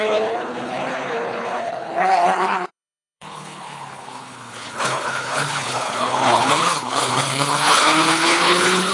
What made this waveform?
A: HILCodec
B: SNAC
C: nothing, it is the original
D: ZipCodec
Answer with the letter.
A